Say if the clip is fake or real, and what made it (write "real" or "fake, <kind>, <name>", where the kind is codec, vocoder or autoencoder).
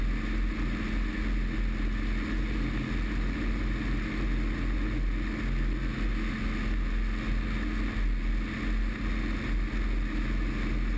real